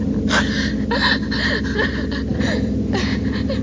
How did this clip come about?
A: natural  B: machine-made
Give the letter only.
A